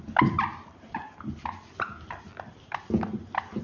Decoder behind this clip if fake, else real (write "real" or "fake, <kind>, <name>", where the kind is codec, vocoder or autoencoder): real